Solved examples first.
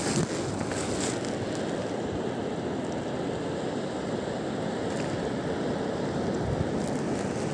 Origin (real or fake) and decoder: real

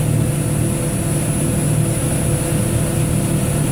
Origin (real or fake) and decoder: real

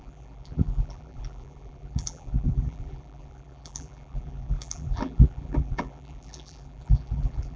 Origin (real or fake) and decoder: fake, vocoder, BigVGAN v2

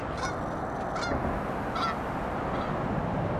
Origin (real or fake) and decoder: real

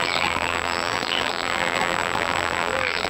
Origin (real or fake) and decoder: fake, vocoder, BigVGAN v2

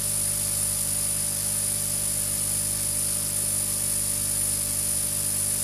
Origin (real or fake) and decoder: real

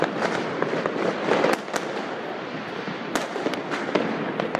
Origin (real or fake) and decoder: real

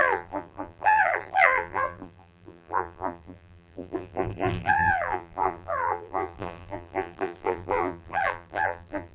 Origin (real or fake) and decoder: fake, vocoder, BigVGAN v2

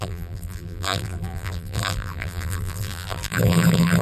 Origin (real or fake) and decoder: fake, vocoder, BigVGAN v2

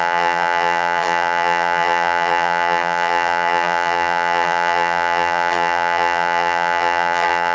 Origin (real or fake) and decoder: fake, vocoder, BigVGAN v2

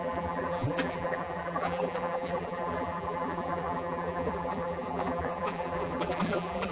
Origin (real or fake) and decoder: fake, vocoder, BigVGAN v2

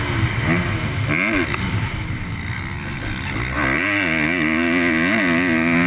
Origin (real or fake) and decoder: real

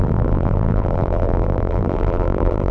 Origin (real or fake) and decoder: fake, vocoder, BigVGAN v2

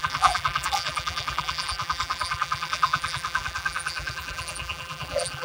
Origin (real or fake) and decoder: fake, vocoder, BigVGAN v2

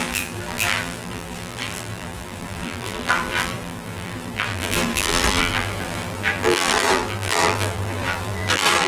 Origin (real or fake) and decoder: fake, vocoder, BigVGAN v2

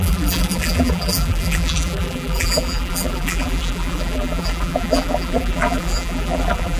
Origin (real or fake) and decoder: fake, vocoder, BigVGAN v2